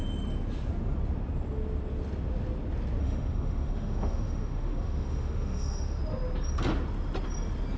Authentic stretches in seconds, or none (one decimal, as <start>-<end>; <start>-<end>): 0.0-3.0; 6.0-7.8